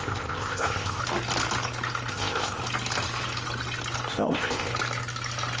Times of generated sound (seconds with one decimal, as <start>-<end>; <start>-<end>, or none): 0.0-1.0; 2.1-2.6; 4.1-4.7